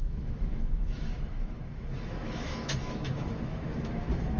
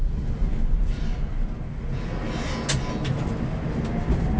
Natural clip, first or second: second